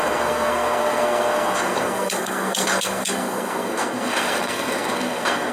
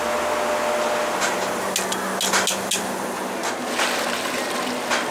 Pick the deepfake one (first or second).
first